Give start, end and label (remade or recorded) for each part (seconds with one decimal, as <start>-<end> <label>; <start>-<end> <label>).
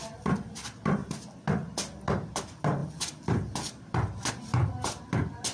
0.0-5.5 recorded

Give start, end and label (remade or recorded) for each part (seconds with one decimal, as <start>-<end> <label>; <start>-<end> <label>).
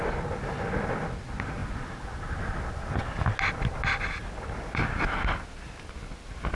0.0-6.5 recorded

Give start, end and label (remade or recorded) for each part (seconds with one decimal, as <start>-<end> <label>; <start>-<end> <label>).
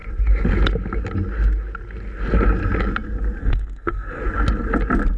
0.0-3.4 recorded; 3.4-4.2 remade; 4.2-5.2 recorded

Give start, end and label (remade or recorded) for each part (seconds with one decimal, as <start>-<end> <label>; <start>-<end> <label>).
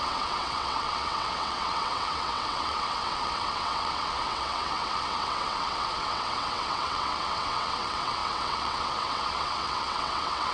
0.0-10.5 remade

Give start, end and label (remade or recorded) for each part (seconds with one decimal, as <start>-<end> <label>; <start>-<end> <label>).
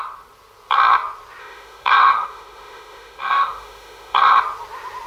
0.0-1.4 recorded; 1.4-4.4 remade; 4.4-5.1 recorded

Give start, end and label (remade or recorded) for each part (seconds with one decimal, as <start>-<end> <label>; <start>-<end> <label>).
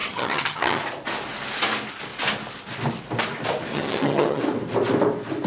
0.0-0.8 remade; 0.8-3.7 recorded; 3.7-4.4 remade; 4.4-5.5 recorded